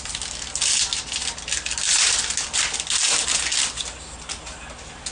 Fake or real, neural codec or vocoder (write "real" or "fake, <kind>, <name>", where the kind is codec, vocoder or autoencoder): real